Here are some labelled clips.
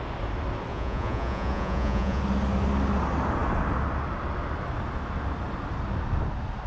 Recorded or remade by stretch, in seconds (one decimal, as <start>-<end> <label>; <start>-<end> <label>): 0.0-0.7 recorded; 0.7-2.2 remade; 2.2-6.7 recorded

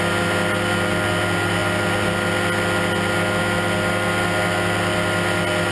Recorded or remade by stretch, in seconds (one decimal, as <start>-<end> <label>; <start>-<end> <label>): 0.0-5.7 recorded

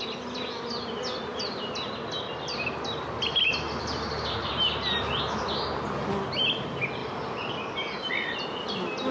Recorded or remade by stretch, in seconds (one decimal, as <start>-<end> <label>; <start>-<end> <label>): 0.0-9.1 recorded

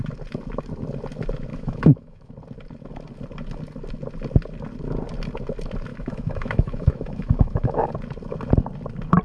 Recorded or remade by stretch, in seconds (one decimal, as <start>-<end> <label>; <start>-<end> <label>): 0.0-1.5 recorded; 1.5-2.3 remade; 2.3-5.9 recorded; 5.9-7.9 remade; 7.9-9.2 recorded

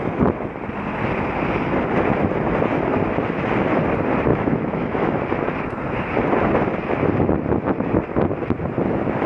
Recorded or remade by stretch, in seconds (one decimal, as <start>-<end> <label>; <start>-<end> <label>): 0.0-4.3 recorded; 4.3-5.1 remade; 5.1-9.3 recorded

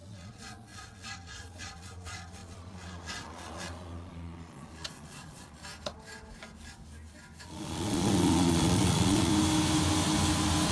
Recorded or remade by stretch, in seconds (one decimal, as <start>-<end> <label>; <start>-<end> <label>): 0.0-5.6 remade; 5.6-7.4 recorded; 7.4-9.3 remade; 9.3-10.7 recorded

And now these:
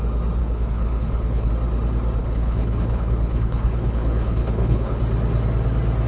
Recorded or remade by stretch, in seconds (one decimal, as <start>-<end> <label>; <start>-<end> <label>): 0.0-0.4 recorded; 0.4-1.5 remade; 1.5-2.2 recorded; 2.2-5.0 remade; 5.0-6.1 recorded

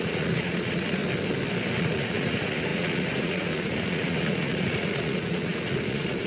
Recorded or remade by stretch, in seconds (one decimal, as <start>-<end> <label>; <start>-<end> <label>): 0.0-1.0 remade; 1.0-1.8 recorded; 1.8-6.3 remade